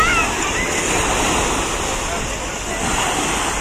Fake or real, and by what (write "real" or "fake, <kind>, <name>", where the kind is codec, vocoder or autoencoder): real